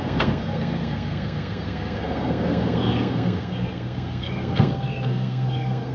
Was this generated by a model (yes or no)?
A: yes